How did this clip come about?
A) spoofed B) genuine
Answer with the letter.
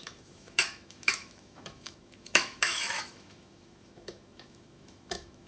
A